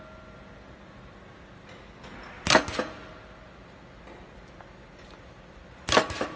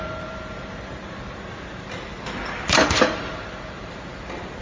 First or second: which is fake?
second